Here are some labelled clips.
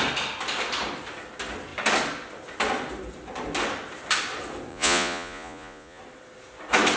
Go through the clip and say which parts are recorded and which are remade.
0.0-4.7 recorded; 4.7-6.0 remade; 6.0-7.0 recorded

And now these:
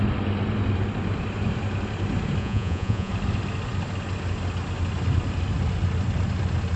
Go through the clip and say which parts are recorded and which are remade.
0.0-2.4 recorded; 2.4-3.1 remade; 3.1-6.8 recorded